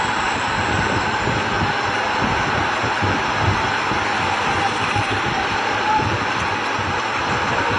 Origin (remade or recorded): remade